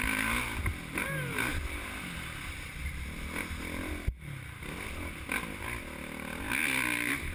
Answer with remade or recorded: recorded